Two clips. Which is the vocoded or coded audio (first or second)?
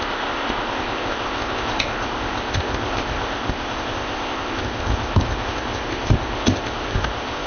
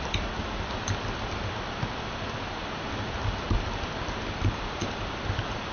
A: first